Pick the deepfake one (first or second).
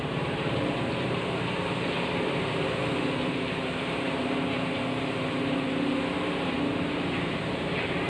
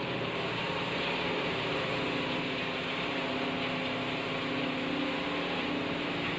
first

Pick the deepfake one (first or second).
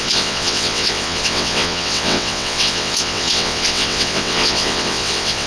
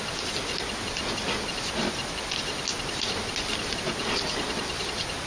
first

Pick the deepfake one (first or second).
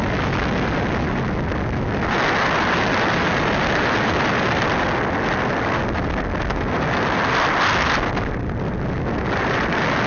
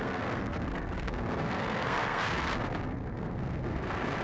second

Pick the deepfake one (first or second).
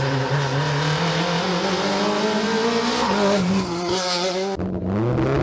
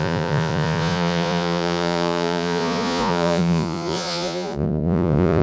second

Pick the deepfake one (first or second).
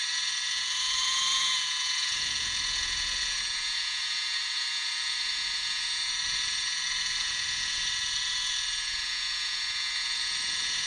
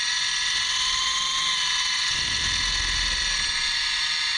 first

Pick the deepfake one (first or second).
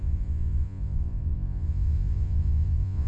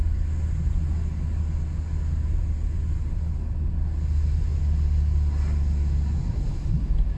first